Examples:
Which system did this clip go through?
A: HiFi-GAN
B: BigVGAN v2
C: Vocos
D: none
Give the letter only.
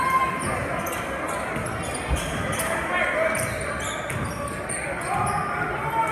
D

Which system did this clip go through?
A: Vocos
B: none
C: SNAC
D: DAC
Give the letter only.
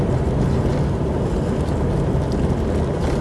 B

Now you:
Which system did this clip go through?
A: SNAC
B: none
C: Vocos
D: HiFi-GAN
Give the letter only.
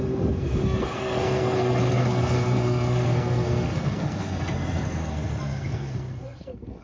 A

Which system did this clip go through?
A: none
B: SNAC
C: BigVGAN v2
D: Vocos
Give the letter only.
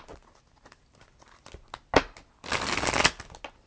A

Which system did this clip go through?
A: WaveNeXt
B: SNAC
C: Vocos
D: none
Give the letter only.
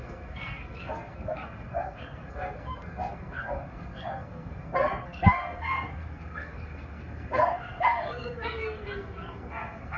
B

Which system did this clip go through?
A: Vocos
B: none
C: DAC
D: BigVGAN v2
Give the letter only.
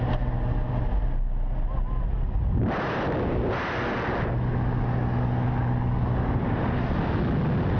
B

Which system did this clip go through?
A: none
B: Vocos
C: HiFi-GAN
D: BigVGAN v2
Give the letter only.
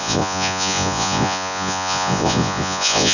B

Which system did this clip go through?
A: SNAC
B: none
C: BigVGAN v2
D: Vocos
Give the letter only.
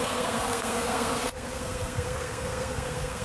A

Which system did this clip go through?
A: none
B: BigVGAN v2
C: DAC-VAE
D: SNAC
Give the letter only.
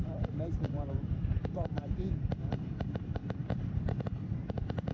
B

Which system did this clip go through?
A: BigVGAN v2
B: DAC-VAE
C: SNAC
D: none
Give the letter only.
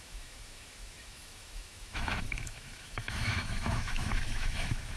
B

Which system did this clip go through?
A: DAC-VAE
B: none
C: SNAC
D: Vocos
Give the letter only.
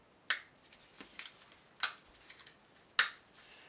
B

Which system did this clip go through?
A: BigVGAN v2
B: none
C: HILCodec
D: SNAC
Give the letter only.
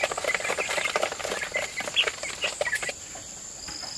B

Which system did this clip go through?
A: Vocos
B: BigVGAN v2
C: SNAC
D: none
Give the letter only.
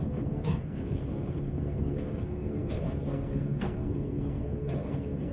C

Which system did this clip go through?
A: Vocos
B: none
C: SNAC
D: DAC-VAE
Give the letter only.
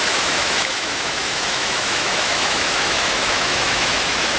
D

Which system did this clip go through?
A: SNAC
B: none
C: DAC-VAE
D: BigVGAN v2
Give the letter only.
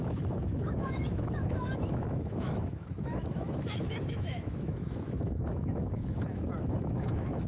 C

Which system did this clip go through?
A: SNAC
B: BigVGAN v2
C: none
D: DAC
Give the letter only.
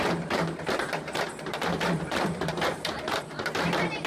B